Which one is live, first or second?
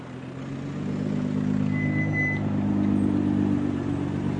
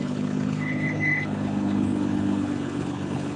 first